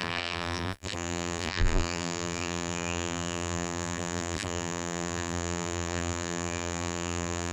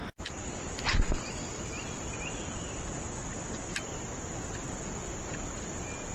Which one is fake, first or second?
first